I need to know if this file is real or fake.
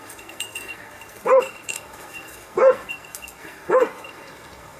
fake